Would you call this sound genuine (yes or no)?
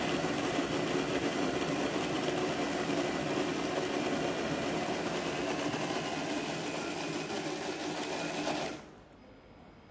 yes